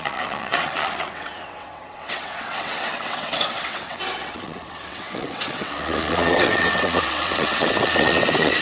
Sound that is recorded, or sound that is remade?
remade